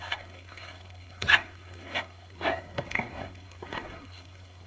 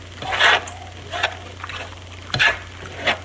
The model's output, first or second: first